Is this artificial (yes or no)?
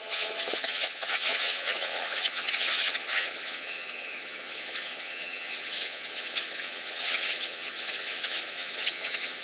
yes